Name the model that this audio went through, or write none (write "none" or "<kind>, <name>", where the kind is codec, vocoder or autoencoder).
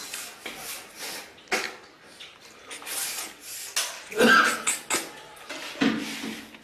none